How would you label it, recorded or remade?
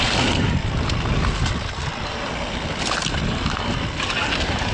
recorded